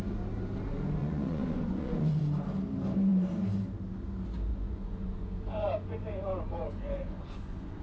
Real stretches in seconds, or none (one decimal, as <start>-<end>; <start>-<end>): 0.0-1.0; 2.2-4.5